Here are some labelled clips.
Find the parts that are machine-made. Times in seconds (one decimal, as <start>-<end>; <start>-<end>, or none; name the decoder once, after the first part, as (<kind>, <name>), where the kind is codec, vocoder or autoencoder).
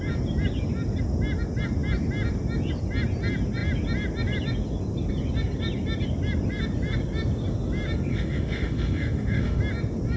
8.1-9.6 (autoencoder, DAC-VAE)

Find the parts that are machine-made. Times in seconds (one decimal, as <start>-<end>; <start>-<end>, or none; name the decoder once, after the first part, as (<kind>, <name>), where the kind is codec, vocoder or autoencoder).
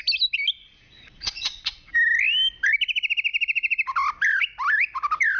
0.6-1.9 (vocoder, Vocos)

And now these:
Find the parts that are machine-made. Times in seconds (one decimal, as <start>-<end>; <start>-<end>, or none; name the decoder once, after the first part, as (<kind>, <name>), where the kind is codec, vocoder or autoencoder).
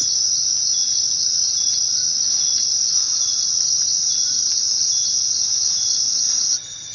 0.8-4.9 (vocoder, BigVGAN v2)